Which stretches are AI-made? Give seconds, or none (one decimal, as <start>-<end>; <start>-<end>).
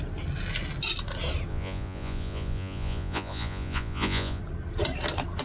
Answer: 1.5-4.4